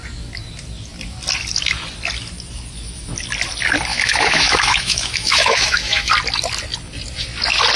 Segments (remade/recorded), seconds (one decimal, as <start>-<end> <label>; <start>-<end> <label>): 0.0-3.9 recorded; 3.9-6.1 remade; 6.1-7.8 recorded